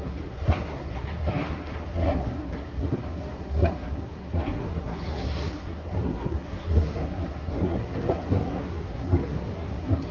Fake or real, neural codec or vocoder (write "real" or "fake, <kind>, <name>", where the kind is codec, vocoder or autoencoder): fake, codec, SNAC